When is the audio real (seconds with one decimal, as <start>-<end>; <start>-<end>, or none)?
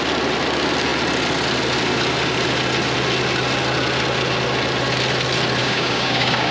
0.0-5.6